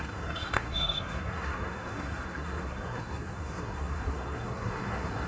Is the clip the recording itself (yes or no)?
no